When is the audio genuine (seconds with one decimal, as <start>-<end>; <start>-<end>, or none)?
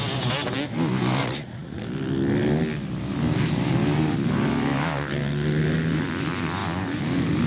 0.0-1.2; 1.8-7.5